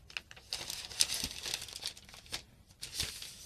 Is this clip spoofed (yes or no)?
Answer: no